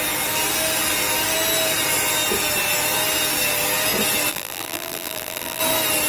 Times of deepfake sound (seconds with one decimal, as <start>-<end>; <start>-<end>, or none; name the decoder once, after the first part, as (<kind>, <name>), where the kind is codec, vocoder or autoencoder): 4.3-5.6 (vocoder, BigVGAN v2)